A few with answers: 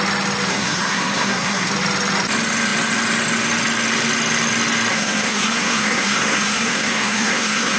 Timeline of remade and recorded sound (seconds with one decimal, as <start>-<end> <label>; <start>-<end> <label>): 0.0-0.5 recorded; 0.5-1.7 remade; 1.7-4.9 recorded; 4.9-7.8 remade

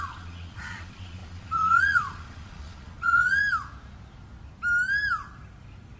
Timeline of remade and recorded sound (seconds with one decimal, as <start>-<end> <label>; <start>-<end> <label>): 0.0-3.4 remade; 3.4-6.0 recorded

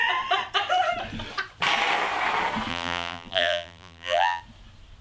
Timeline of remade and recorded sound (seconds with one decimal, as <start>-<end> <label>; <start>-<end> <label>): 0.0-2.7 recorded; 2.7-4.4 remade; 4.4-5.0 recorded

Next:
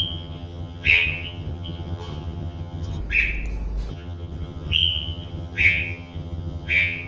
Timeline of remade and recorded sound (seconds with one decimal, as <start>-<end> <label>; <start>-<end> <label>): 0.0-3.0 remade; 3.0-3.9 recorded; 3.9-7.1 remade

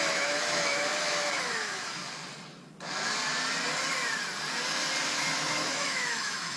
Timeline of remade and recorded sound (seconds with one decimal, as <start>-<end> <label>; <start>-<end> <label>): 0.0-2.0 remade; 2.0-5.1 recorded; 5.1-6.6 remade

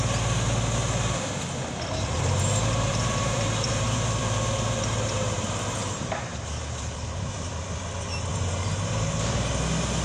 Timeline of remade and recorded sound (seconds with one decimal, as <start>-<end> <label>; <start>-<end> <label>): 0.0-2.9 recorded; 2.9-7.8 remade; 7.8-8.3 recorded; 8.3-9.5 remade; 9.5-10.0 recorded